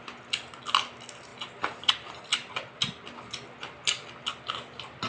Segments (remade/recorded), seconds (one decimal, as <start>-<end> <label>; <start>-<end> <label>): 0.0-5.1 recorded